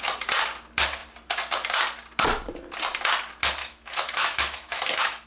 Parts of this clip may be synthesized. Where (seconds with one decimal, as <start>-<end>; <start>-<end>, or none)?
3.6-5.3